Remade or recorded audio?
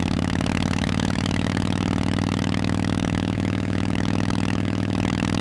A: remade